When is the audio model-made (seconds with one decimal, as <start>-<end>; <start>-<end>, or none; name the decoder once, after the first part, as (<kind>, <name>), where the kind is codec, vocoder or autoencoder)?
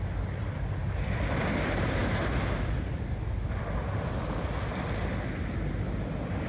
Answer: none